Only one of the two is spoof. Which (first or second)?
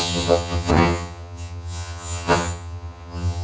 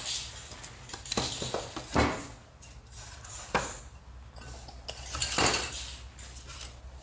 first